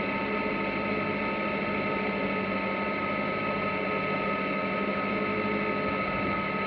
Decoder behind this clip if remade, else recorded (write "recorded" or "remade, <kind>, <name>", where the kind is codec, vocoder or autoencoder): recorded